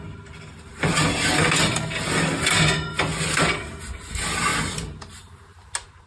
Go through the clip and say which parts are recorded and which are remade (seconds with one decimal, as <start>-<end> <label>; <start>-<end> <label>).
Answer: 0.0-6.1 recorded